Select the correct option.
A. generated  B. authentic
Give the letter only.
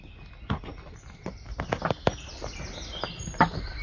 B